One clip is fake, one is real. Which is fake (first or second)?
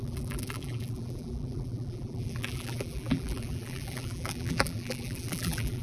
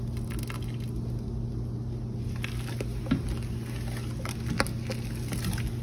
first